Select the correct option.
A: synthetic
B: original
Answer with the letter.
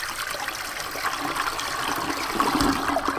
B